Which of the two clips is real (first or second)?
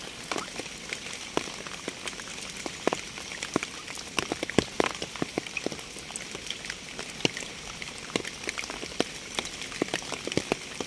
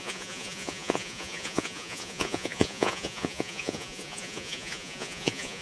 first